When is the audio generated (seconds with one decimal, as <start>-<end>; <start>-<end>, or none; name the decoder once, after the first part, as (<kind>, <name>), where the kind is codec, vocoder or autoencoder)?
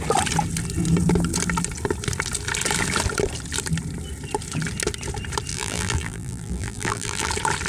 5.5-7.3 (vocoder, BigVGAN v2)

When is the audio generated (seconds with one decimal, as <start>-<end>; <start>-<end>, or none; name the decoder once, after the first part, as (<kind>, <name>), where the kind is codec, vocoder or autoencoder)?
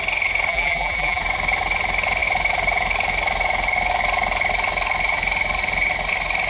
0.5-1.2 (vocoder, BigVGAN v2)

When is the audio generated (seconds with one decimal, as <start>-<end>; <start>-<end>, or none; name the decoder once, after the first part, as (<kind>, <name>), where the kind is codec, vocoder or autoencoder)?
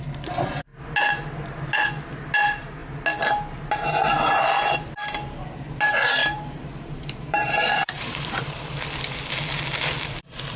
6.2-8.7 (vocoder, BigVGAN v2)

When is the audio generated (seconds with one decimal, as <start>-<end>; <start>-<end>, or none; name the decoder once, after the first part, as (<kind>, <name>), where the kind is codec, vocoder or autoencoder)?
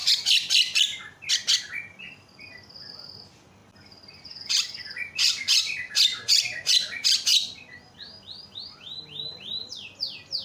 7.3-10.0 (vocoder, BigVGAN v2)